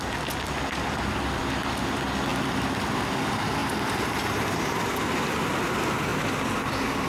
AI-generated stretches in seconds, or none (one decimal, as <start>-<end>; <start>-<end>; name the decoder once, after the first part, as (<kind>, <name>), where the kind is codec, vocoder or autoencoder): 2.3-2.9 (vocoder, BigVGAN v2)